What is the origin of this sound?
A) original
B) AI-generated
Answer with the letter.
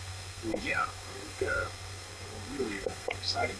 B